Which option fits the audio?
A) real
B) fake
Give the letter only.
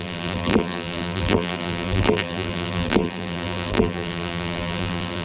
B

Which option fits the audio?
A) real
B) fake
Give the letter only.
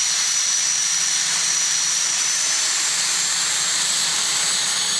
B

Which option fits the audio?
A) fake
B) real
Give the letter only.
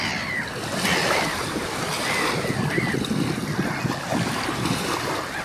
B